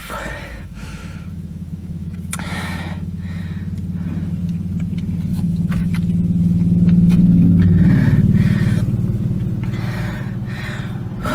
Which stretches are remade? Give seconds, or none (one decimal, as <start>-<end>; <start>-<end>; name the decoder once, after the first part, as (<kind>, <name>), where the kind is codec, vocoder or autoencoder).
0.5-3.4 (autoencoder, DAC-VAE); 5.3-5.9

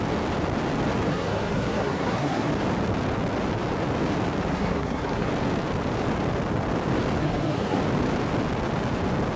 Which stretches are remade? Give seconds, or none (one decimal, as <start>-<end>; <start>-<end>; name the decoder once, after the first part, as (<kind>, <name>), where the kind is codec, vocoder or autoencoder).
1.1-2.5 (codec, SNAC); 4.5-5.3; 7.2-7.8

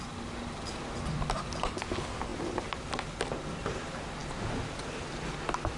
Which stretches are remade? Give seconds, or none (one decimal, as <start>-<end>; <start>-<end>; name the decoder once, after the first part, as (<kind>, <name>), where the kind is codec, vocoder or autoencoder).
none

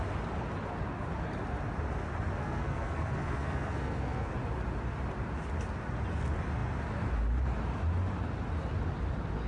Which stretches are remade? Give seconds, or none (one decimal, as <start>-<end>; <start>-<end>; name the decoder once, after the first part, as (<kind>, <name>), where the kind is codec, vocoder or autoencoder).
2.4-4.3 (codec, SNAC)

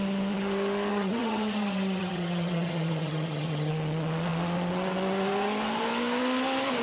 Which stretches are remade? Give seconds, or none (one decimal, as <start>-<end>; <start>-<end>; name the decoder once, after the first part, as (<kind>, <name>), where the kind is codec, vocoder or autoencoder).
0.9-3.7 (vocoder, HiFi-GAN)

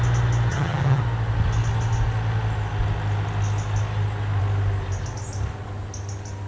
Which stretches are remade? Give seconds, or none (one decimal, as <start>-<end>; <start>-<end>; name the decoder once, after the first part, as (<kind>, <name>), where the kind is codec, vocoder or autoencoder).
0.5-1.0 (vocoder, HiFi-GAN)

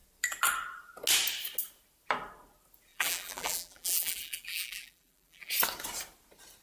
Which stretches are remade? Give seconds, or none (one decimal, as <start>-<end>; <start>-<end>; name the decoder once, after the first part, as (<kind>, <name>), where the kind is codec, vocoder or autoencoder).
2.9-5.5 (vocoder, BigVGAN v2)